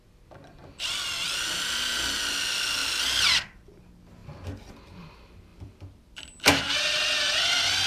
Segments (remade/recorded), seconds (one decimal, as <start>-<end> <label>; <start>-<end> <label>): 0.0-0.6 recorded; 0.6-1.3 remade; 1.3-5.5 recorded; 5.5-6.7 remade; 6.7-7.9 recorded